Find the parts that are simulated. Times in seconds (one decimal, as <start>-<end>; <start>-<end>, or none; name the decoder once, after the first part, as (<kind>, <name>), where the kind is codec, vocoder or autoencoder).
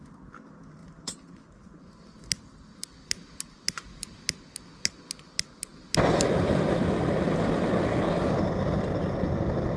0.8-1.5 (vocoder, BigVGAN v2)